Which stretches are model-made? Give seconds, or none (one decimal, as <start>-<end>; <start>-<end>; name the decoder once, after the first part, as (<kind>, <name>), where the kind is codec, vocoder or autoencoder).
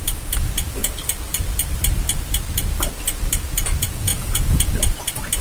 4.1-4.7 (vocoder, Vocos)